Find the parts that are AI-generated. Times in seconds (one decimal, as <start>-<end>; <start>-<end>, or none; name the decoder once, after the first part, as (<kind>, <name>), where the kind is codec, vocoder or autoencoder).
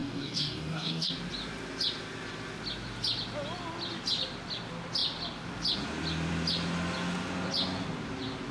0.0-1.1 (codec, DAC)